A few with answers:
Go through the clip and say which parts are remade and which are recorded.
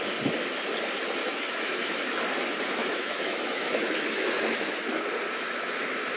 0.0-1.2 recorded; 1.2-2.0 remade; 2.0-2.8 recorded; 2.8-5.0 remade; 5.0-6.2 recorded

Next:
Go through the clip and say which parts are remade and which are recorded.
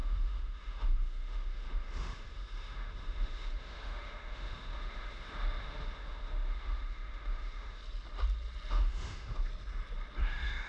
0.0-7.8 remade; 7.8-8.7 recorded; 8.7-9.5 remade; 9.5-10.2 recorded; 10.2-10.7 remade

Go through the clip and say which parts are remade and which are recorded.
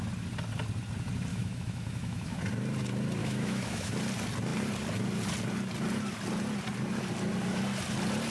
0.0-1.3 recorded; 1.3-2.4 remade; 2.4-3.2 recorded; 3.2-3.9 remade; 3.9-8.3 recorded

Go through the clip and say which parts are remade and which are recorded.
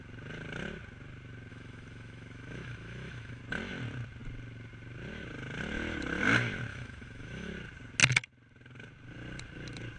0.0-1.5 recorded; 1.5-3.4 remade; 3.4-6.7 recorded; 6.7-7.5 remade; 7.5-10.0 recorded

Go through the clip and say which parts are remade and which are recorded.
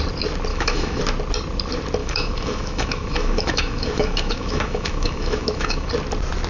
0.0-0.5 recorded; 0.5-1.0 remade; 1.0-2.0 recorded; 2.0-5.9 remade; 5.9-6.5 recorded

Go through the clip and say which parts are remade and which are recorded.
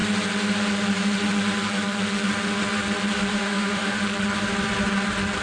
0.0-3.3 recorded; 3.3-4.0 remade; 4.0-5.4 recorded